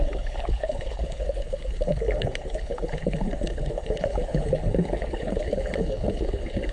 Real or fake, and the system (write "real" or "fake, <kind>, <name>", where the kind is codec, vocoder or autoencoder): fake, codec, HILCodec